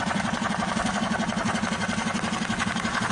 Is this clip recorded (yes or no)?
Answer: yes